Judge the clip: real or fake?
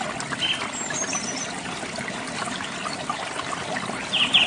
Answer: real